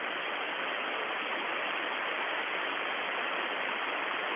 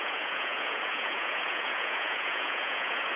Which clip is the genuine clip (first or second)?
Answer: first